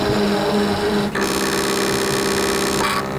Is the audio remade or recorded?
recorded